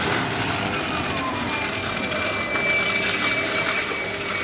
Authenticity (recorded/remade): recorded